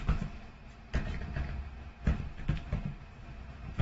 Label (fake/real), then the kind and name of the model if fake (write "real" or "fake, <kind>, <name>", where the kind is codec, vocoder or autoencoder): fake, vocoder, BigVGAN v2